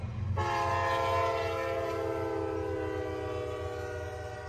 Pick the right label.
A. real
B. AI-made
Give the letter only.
A